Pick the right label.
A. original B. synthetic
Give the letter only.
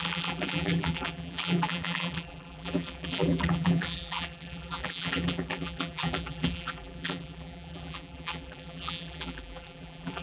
B